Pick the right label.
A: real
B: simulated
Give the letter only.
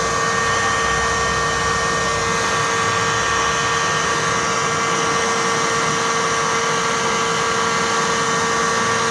A